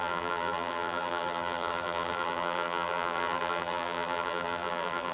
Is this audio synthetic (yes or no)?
yes